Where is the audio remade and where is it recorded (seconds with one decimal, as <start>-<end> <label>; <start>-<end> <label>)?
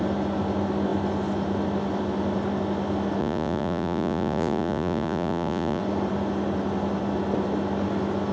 0.0-3.2 recorded; 3.2-5.8 remade; 5.8-8.3 recorded